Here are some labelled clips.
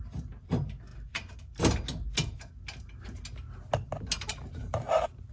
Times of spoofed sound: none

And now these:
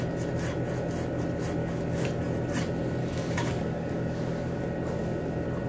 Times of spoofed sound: 1.6-2.2 (codec, DAC); 3.0-4.6

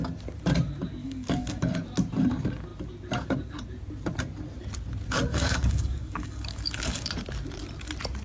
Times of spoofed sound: 1.0-1.7 (codec, DAC); 5.3-7.1

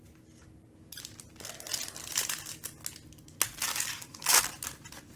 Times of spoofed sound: 3.7-4.4 (codec, DAC)

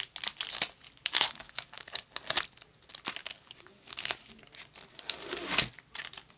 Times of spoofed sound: 1.0-2.0 (codec, DAC); 3.2-4.4

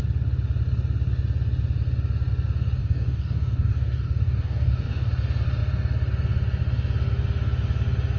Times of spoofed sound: 2.8-5.1 (codec, DAC)

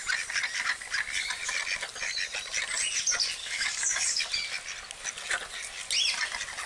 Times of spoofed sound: 3.4-4.2 (codec, DAC)